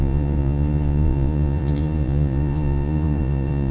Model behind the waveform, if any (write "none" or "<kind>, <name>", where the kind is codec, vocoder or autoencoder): vocoder, Vocos